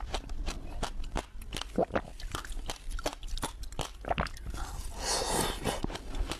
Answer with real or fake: real